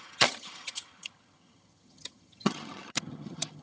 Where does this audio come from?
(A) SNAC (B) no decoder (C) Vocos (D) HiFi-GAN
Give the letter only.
D